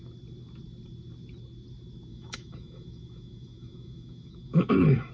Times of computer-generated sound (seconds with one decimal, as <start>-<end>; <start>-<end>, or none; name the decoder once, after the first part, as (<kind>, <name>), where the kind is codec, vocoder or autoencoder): 2.1-5.1 (autoencoder, DAC-VAE)